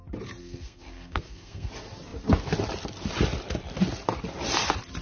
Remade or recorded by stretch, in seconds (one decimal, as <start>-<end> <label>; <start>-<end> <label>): 0.0-0.4 recorded; 0.4-1.7 remade; 1.7-5.0 recorded